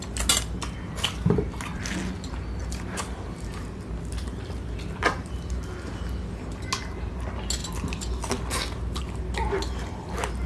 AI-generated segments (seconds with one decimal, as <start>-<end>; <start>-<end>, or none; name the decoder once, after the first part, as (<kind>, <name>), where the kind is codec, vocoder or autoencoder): 2.6-3.5 (vocoder, BigVGAN v2)